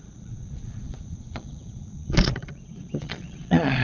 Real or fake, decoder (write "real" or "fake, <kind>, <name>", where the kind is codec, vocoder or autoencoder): fake, vocoder, Vocos